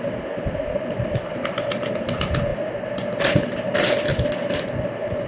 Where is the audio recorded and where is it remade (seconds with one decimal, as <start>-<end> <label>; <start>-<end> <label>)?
0.0-5.3 recorded